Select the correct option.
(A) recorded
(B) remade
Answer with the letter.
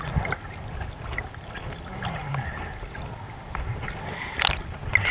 A